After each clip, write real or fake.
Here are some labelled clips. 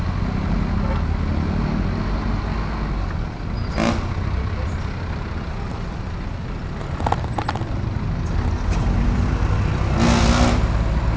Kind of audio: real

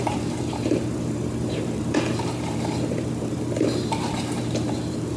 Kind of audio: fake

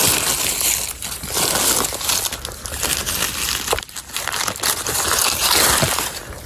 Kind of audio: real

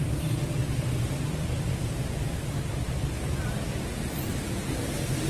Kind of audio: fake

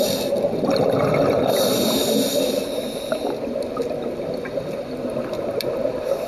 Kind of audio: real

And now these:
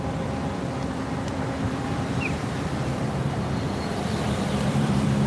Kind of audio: fake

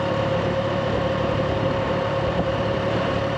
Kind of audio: fake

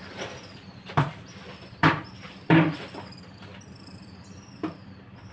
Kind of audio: fake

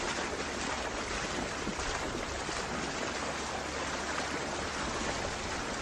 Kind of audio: real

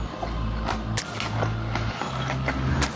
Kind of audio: real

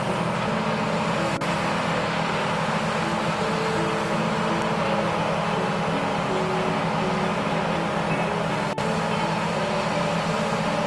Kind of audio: real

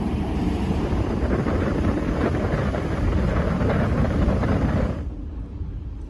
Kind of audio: fake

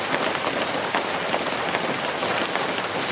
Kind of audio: real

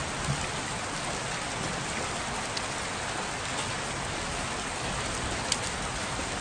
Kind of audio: real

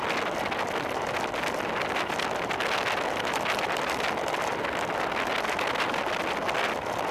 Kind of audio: real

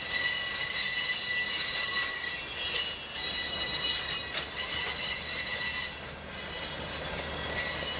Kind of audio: real